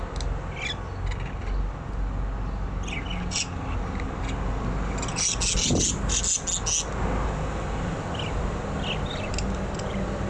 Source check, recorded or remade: recorded